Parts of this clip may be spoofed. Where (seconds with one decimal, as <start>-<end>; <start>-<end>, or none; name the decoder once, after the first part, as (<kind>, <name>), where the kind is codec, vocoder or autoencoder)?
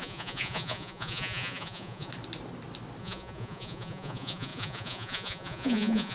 0.0-2.1 (vocoder, Vocos); 3.0-6.1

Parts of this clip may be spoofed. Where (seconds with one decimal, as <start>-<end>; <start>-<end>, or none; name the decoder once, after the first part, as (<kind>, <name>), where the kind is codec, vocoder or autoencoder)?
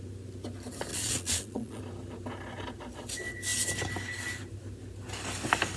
0.9-1.8 (vocoder, Vocos)